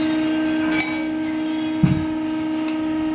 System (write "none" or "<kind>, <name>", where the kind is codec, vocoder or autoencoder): none